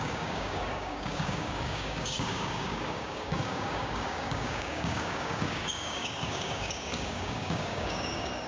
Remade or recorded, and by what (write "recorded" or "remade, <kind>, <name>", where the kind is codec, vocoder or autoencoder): remade, codec, DAC